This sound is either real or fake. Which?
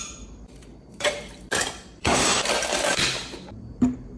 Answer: fake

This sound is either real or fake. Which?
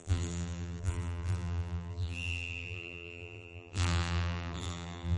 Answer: fake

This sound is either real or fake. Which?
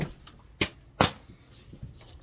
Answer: real